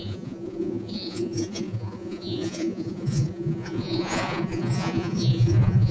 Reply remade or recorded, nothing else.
remade